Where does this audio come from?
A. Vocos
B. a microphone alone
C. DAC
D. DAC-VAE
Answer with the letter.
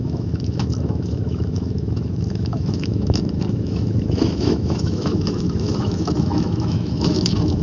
D